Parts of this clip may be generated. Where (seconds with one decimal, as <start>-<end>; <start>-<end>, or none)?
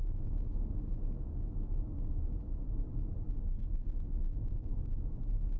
none